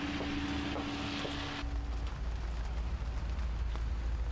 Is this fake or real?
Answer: real